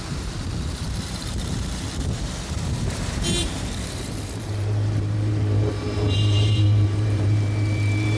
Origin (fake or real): fake